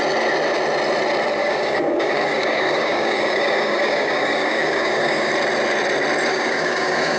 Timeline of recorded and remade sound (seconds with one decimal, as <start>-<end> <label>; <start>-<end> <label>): 0.0-1.4 recorded; 1.4-5.3 remade; 5.3-6.3 recorded; 6.3-7.2 remade